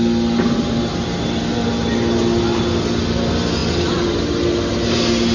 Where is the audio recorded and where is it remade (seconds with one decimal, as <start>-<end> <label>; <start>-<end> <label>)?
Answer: 0.0-5.3 recorded